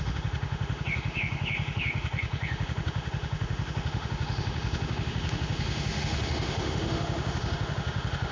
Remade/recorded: remade